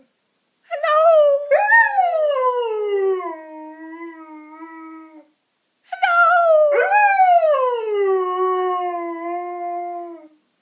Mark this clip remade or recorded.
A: recorded